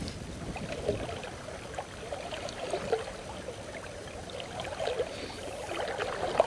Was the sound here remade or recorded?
recorded